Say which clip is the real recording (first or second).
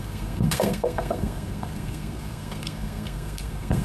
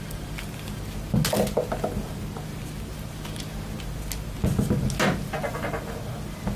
second